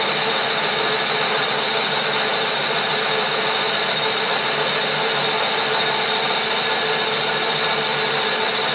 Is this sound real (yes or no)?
yes